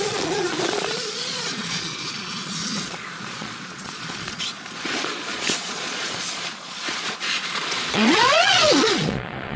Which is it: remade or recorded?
remade